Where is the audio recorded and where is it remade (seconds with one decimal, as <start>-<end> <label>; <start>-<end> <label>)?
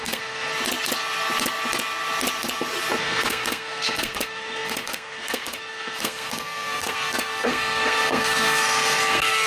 0.0-0.5 remade; 0.5-3.0 recorded; 3.0-9.5 remade